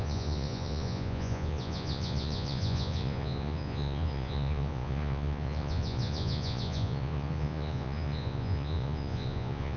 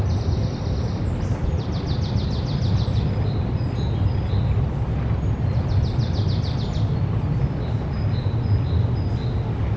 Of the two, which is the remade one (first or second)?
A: first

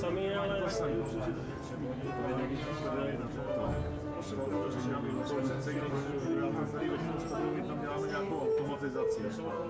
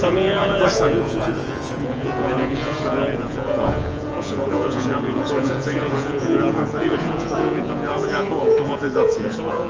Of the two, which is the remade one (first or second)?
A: second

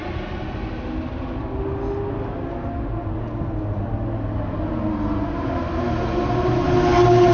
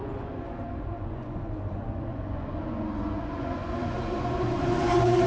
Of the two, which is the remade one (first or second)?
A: second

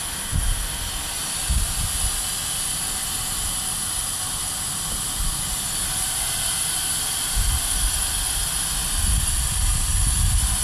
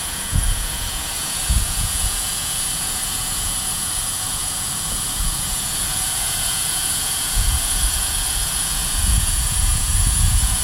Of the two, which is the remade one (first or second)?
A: second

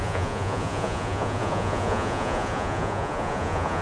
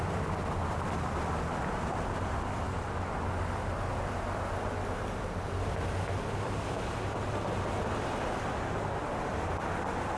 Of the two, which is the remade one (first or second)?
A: first